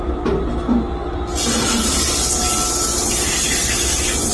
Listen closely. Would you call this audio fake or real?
real